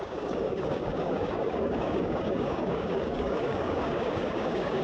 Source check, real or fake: fake